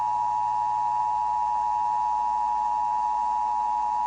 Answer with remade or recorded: recorded